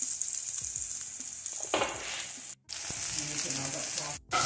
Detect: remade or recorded recorded